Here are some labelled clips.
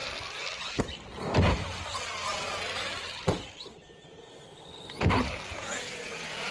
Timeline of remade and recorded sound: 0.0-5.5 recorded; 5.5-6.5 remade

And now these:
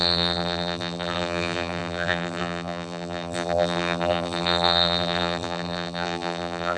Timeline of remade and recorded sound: 0.0-6.8 remade

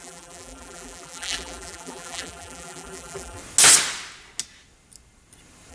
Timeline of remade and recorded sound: 0.0-3.4 remade; 3.4-5.7 recorded

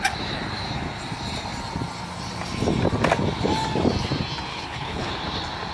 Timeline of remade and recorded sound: 0.0-4.5 recorded; 4.5-5.1 remade; 5.1-5.7 recorded

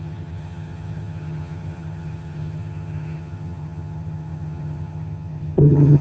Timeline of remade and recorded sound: 0.0-6.0 remade

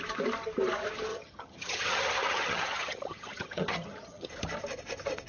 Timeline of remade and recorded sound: 0.0-1.1 recorded; 1.1-4.3 remade; 4.3-5.3 recorded

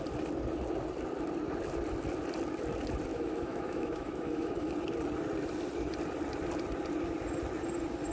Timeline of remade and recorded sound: 0.0-3.1 recorded; 3.1-4.7 remade; 4.7-8.1 recorded